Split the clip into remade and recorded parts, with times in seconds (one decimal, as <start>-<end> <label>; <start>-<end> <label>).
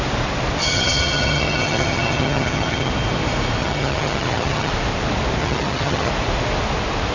0.0-0.6 recorded; 0.6-2.9 remade; 2.9-3.6 recorded; 3.6-4.7 remade; 4.7-5.4 recorded; 5.4-6.1 remade; 6.1-7.1 recorded